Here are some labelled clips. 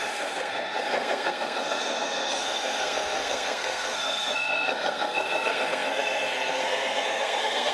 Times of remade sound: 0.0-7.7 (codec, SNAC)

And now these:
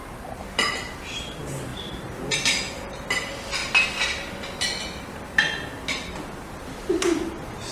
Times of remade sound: 0.0-7.7 (vocoder, BigVGAN v2)

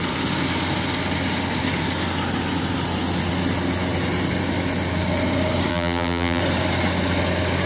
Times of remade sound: 5.7-6.4 (vocoder, BigVGAN v2)